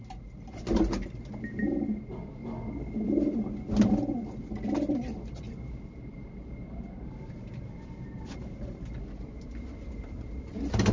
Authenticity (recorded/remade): recorded